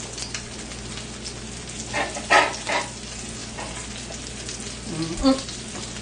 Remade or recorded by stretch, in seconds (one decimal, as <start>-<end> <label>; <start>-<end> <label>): 0.0-6.0 recorded